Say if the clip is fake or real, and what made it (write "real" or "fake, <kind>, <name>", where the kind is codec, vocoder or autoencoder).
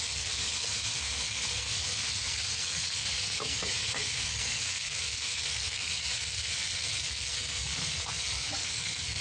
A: fake, codec, SNAC